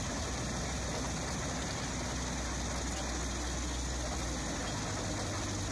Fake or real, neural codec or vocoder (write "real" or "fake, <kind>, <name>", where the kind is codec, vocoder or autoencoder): real